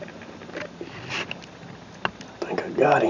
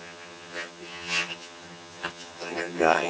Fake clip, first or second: second